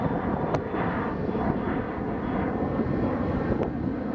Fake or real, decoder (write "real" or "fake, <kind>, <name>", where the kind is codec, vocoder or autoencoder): real